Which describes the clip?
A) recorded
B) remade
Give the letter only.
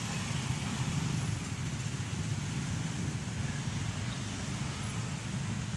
A